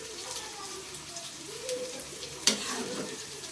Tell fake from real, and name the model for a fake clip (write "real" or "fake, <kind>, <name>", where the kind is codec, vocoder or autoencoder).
fake, vocoder, BigVGAN v2